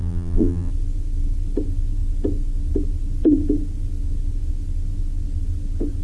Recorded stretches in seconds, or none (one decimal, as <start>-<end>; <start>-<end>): 0.7-6.0